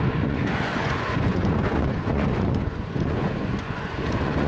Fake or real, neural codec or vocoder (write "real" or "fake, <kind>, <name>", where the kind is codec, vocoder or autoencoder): fake, vocoder, Vocos